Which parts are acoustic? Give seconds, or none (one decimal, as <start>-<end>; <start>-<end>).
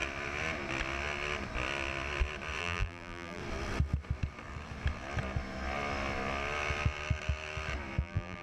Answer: 0.0-2.6; 3.4-8.0